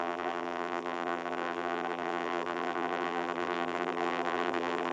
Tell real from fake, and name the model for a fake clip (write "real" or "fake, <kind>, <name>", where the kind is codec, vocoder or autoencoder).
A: fake, vocoder, BigVGAN v2